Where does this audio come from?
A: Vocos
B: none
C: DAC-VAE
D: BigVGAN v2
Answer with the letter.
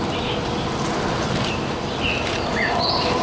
D